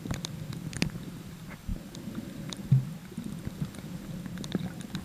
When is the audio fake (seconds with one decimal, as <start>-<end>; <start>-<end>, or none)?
none